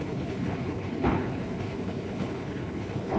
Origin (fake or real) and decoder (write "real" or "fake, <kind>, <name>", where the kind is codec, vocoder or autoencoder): fake, codec, HILCodec